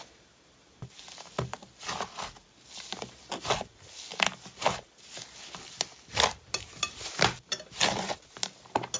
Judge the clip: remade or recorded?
recorded